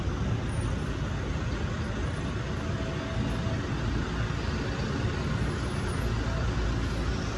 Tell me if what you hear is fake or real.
real